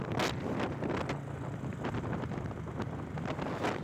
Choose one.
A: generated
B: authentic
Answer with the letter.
B